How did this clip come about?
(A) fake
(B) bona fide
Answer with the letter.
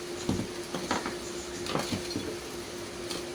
B